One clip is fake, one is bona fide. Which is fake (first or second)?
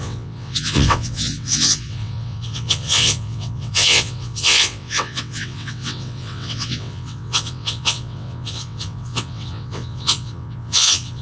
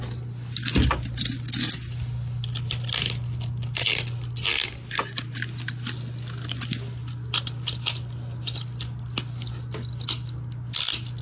first